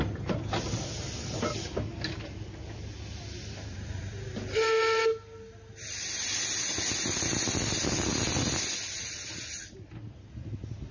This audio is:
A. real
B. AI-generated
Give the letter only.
A